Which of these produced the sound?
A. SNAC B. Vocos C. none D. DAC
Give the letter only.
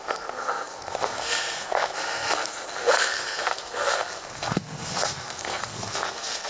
A